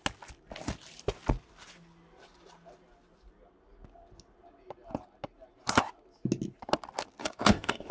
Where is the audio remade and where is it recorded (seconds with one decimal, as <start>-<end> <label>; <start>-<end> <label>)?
0.0-7.2 recorded; 7.2-7.9 remade